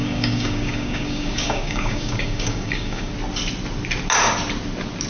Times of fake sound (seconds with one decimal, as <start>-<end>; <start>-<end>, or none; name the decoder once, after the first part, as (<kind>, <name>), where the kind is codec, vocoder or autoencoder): 0.0-3.1 (codec, DAC)